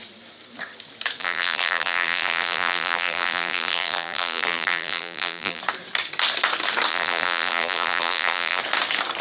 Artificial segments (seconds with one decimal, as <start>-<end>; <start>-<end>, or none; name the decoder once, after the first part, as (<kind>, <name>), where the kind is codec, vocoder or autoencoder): 1.2-5.6 (vocoder, BigVGAN v2); 6.9-8.6